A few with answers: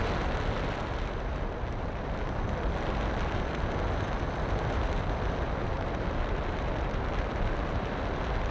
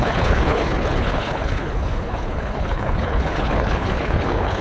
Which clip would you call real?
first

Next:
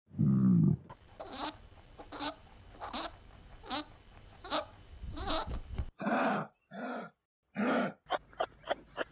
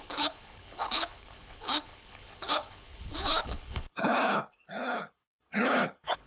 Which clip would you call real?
first